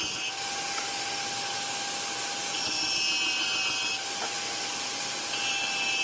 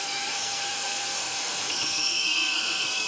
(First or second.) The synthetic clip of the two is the second